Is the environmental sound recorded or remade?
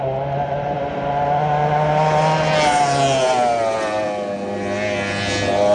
recorded